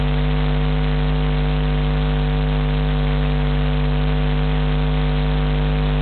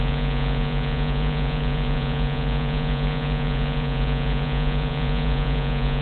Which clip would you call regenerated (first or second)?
second